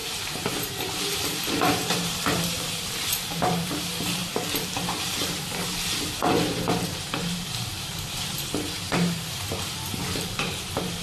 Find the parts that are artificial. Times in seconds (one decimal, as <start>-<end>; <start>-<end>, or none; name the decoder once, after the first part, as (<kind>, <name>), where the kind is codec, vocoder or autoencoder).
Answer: 0.0-11.0 (vocoder, BigVGAN v2)